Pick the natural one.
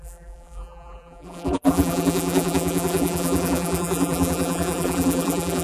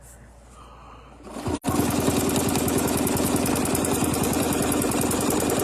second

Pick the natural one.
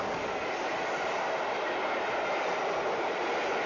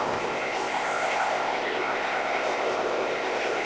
first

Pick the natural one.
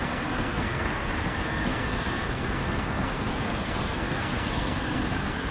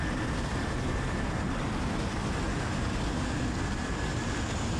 second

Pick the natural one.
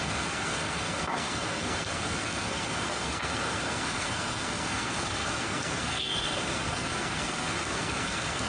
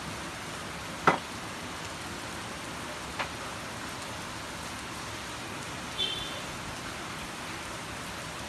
second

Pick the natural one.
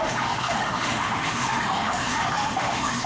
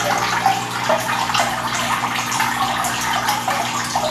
second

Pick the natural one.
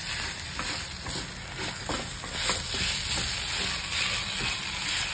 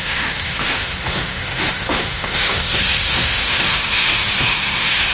first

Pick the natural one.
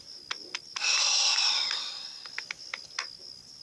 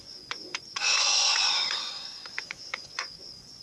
first